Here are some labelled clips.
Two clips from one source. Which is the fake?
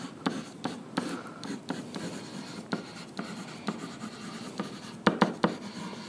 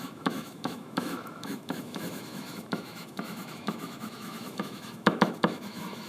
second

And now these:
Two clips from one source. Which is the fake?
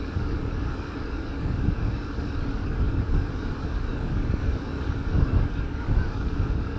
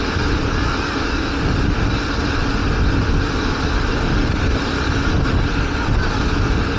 first